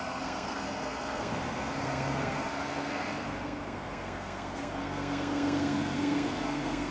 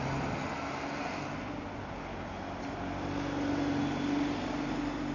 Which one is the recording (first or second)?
second